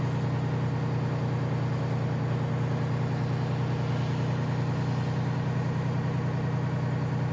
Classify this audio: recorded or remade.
recorded